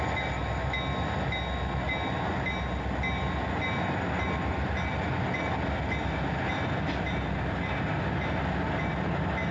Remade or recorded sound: recorded